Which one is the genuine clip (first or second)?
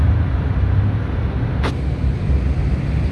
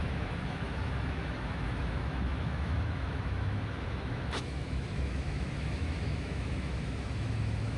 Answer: first